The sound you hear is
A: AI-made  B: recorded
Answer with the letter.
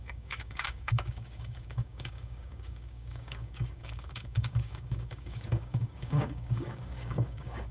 A